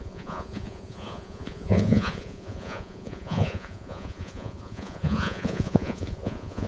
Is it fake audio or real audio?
fake